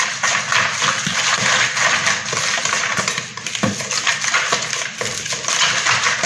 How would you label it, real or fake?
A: real